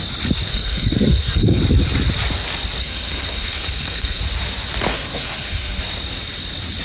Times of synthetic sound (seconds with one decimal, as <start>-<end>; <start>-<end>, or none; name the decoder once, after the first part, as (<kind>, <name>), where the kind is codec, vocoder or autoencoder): 0.5-1.6 (codec, SNAC); 2.8-4.2; 4.9-5.8